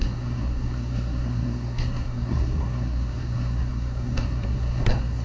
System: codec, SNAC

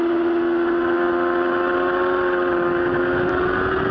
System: none